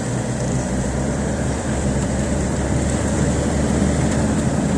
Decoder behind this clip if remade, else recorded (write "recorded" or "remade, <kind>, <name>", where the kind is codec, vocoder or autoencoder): remade, vocoder, BigVGAN v2